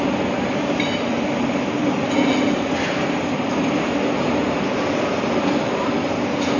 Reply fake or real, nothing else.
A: real